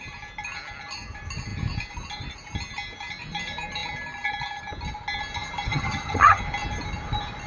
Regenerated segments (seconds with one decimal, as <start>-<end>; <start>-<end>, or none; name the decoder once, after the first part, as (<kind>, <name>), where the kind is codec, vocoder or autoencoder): 5.7-6.4 (vocoder, HiFi-GAN)